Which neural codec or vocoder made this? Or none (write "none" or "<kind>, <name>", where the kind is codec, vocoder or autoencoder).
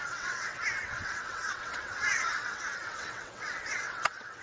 vocoder, WaveNeXt